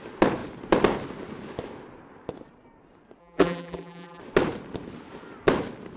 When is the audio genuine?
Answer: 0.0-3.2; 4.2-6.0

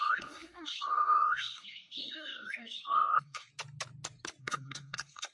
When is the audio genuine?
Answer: 3.5-4.4

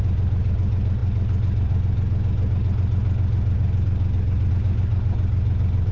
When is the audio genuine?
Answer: 0.0-5.9

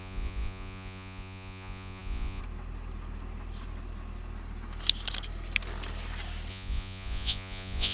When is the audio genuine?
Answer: 2.4-6.5

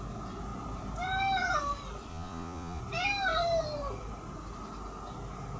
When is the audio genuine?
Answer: 0.0-2.1; 2.8-5.6

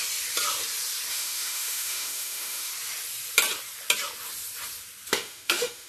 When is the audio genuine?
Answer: 0.0-1.1; 2.7-5.1

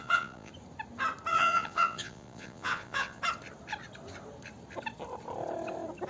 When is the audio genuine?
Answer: 0.5-1.3; 3.2-6.1

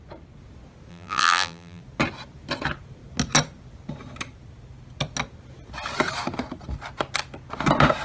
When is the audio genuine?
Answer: 0.0-0.9; 1.8-8.0